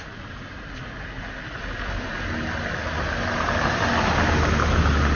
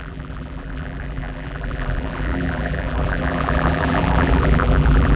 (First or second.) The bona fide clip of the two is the first